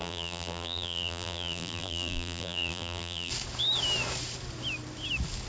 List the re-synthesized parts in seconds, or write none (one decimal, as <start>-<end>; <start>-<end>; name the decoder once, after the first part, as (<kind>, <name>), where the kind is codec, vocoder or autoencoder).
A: 0.0-3.3 (vocoder, BigVGAN v2)